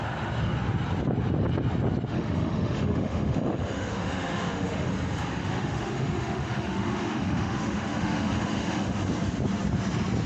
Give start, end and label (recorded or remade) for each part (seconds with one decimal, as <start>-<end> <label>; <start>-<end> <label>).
0.0-2.1 recorded; 2.1-4.9 remade; 4.9-5.4 recorded; 5.4-9.0 remade; 9.0-10.3 recorded